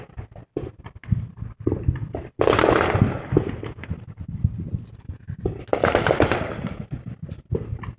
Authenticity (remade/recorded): recorded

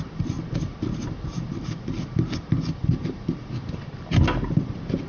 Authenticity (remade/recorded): recorded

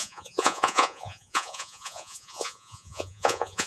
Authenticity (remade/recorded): remade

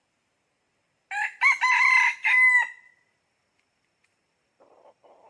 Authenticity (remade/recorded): recorded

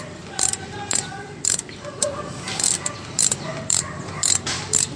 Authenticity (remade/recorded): remade